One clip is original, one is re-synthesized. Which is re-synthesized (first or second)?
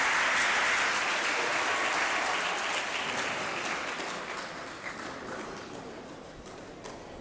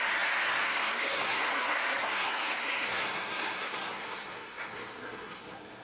second